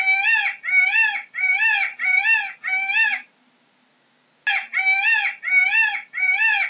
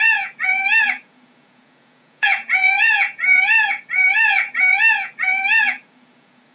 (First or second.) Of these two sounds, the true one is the first